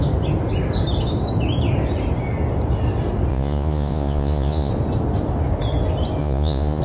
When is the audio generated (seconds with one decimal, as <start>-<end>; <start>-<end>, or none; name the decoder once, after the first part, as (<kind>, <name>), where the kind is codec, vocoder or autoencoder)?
3.3-4.7 (vocoder, Vocos); 6.2-6.8